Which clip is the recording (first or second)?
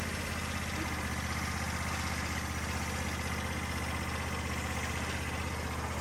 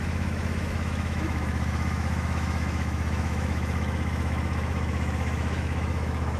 first